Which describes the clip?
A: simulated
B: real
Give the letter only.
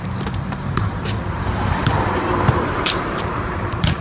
A